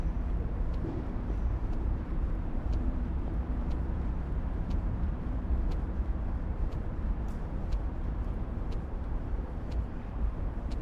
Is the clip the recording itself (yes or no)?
no